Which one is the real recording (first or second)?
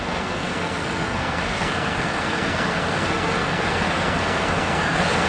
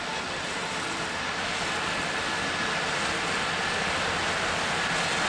second